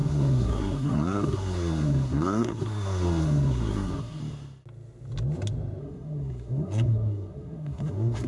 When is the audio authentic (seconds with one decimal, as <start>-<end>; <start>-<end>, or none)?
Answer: 4.2-5.8